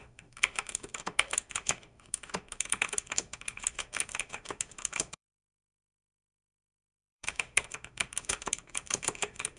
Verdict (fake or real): fake